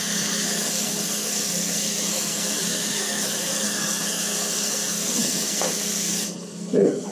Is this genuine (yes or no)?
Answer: no